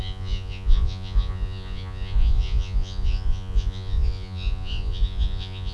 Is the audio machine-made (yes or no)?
yes